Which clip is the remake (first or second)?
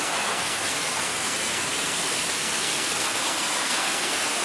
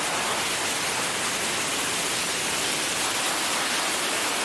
first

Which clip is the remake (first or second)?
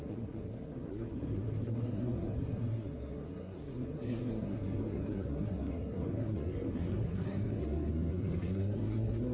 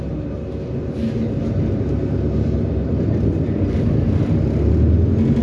first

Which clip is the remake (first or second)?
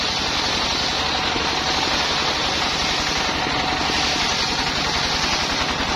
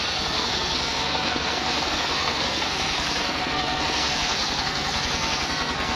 second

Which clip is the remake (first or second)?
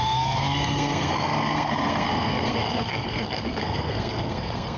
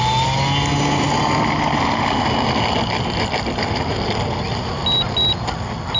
first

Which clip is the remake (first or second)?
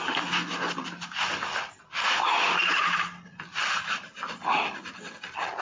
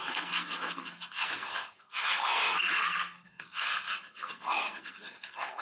second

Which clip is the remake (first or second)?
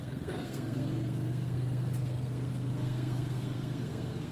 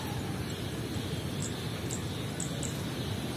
first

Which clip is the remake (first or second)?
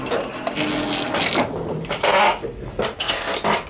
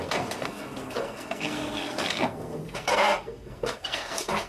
second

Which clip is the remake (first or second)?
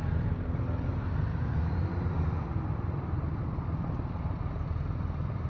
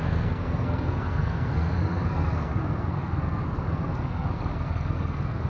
second